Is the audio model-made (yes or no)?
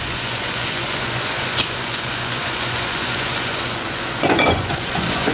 yes